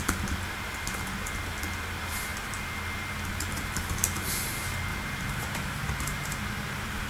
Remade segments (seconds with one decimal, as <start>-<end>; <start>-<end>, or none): 4.9-7.1